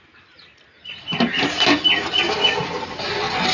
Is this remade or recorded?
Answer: recorded